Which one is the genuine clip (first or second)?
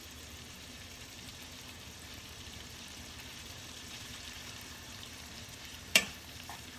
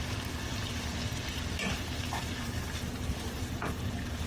second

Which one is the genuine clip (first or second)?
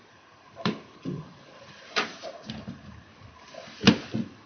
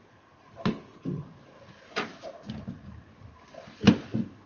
second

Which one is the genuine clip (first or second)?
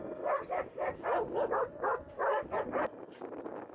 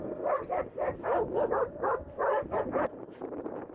first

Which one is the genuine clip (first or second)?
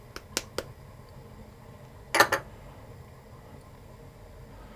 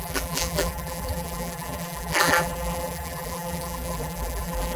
first